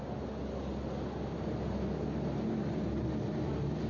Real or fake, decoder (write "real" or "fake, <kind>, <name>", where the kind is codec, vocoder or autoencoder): real